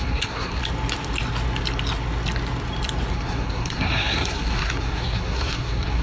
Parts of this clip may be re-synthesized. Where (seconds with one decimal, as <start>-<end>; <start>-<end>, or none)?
0.0-0.6; 3.1-6.0